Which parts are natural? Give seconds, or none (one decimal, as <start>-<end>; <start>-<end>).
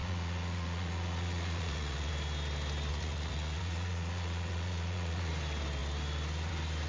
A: 2.1-2.9; 5.3-6.9